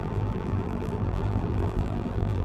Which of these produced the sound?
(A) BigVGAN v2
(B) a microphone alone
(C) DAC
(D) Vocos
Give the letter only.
A